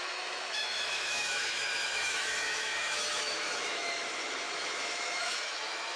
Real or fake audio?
fake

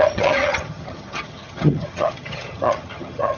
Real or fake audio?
fake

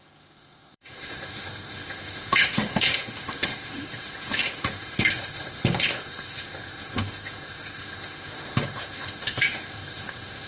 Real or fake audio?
fake